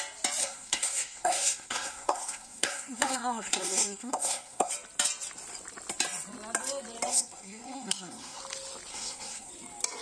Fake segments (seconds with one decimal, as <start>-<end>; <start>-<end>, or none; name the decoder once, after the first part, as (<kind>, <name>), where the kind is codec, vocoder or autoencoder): 0.4-4.7 (codec, SNAC); 7.1-8.4; 8.9-9.5

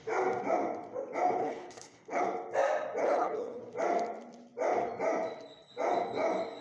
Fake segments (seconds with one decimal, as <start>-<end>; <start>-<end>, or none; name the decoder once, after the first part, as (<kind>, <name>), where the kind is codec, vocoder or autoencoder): 1.4-2.2 (codec, HILCodec); 3.0-3.6